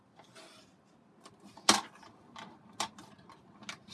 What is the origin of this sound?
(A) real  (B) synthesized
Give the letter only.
A